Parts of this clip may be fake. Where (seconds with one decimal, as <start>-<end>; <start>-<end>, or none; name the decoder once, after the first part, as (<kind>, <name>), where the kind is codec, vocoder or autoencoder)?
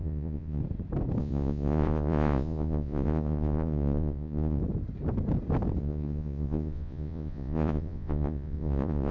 0.0-0.6 (vocoder, Vocos); 1.2-4.6; 5.8-9.1